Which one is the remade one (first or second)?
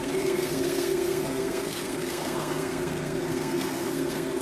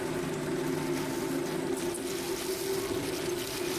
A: first